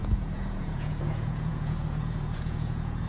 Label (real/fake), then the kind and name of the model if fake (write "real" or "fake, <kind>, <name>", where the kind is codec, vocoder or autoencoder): fake, vocoder, Vocos